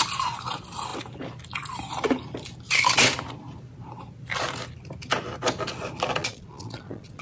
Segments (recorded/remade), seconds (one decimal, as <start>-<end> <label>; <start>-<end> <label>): 0.0-6.2 recorded; 6.2-7.2 remade